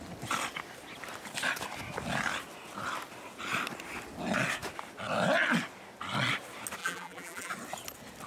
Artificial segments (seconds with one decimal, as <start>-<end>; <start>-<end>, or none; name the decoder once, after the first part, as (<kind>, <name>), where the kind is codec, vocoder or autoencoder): 6.8-7.5 (vocoder, BigVGAN v2)